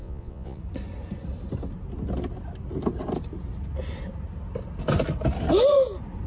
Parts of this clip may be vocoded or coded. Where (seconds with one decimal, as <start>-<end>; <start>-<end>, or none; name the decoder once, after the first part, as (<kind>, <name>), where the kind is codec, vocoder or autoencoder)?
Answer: 0.0-0.6 (vocoder, Vocos)